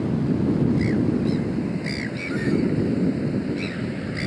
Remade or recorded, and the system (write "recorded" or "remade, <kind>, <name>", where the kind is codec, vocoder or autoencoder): recorded